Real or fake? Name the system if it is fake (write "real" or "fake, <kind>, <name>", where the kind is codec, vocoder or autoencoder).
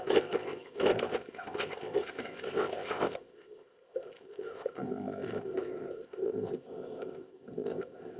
fake, codec, ZipCodec